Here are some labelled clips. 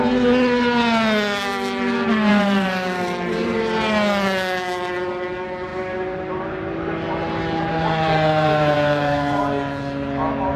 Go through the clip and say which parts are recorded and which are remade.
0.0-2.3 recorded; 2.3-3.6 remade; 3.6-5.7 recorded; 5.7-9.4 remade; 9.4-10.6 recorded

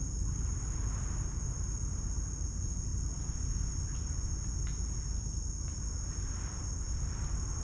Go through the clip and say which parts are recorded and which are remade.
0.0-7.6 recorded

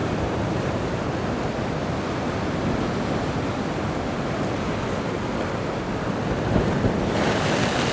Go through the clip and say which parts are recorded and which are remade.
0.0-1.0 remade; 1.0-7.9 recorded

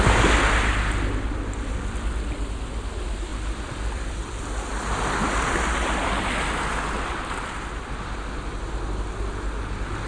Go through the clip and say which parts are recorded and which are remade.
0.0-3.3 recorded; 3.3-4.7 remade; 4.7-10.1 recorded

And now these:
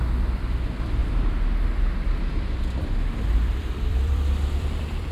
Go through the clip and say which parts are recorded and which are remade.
0.0-5.1 remade